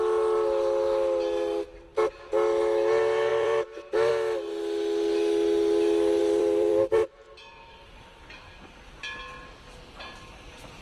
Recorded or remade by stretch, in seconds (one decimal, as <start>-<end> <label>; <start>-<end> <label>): 0.0-3.3 recorded; 3.3-4.1 remade; 4.1-6.2 recorded; 6.2-9.0 remade; 9.0-10.8 recorded